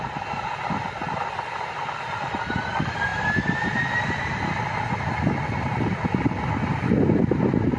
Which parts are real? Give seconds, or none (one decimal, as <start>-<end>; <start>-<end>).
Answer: 0.0-7.8